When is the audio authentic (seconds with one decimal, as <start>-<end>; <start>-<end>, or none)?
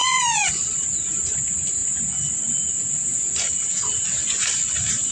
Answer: 0.5-5.1